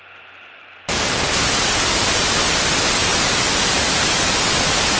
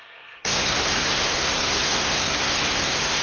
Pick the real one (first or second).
first